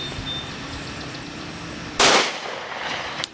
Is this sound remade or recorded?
recorded